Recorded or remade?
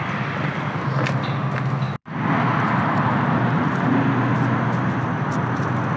recorded